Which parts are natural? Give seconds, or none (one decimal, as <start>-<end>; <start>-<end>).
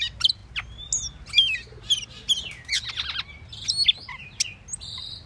0.0-5.3